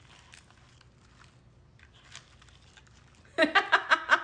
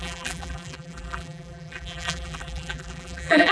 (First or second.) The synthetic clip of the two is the second